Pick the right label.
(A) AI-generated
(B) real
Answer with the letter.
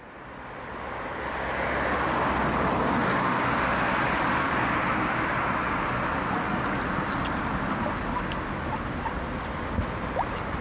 B